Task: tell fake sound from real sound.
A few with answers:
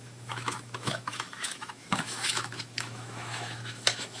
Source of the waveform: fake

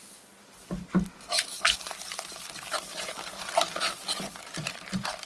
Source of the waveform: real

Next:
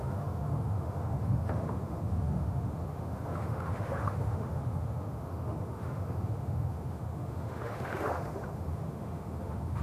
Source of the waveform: fake